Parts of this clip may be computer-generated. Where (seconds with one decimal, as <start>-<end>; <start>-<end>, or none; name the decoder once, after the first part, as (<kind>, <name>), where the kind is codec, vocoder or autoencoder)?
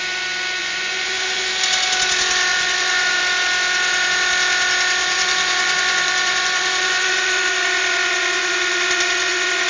0.6-1.5 (vocoder, Vocos); 2.5-3.2; 5.0-9.7